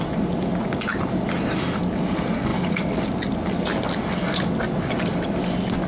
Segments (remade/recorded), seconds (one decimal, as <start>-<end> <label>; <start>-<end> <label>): 0.0-5.9 recorded